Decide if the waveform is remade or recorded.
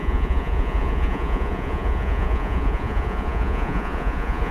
remade